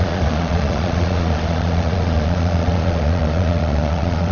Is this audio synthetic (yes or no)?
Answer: yes